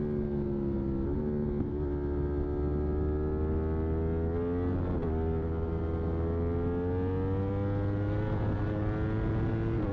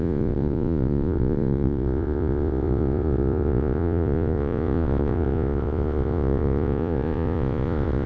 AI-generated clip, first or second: second